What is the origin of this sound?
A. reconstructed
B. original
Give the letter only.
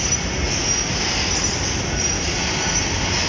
B